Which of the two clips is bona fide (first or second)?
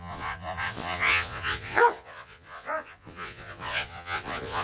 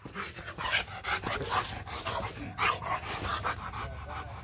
second